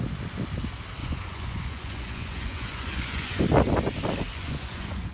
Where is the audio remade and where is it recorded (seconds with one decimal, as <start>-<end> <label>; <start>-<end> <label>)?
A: 0.0-1.0 recorded; 1.0-3.4 remade; 3.4-4.3 recorded; 4.3-5.1 remade